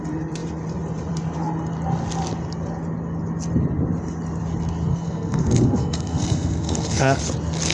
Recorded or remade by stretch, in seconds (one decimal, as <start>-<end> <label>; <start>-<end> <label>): 0.0-4.9 recorded; 4.9-7.2 remade; 7.2-7.7 recorded